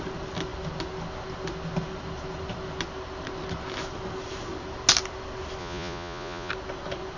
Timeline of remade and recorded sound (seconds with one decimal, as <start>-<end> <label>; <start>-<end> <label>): 0.0-5.6 recorded; 5.6-6.5 remade; 6.5-7.2 recorded